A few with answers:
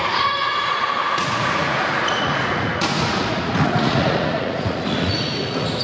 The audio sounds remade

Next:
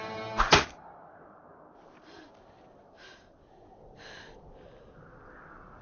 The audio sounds recorded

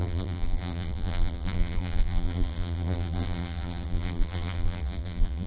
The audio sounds remade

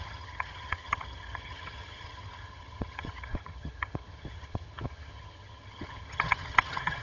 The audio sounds remade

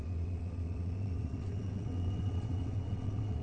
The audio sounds remade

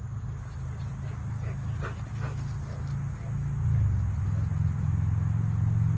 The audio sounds recorded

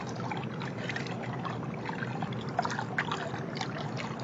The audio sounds recorded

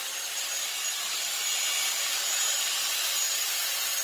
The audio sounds recorded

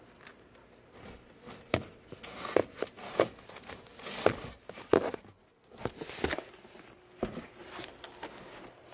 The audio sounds recorded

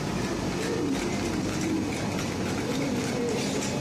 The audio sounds recorded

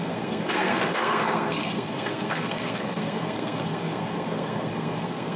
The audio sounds remade